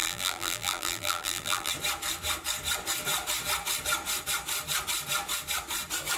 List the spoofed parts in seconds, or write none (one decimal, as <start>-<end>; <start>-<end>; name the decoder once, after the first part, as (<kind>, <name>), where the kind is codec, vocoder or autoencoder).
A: 0.0-1.7 (vocoder, BigVGAN v2)